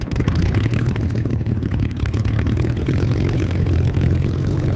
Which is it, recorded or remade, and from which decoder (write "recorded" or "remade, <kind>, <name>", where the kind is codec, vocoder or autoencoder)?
remade, codec, HILCodec